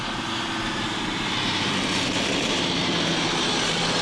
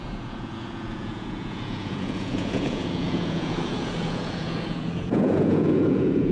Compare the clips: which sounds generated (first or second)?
second